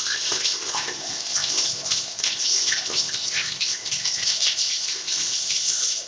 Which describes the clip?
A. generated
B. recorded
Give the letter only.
A